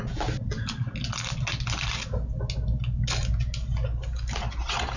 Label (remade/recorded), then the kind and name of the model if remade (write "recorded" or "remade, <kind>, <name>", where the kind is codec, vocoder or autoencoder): recorded